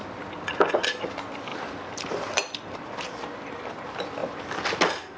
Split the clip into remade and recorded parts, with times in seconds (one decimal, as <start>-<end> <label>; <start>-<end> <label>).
0.0-1.5 recorded; 1.5-3.8 remade; 3.8-5.2 recorded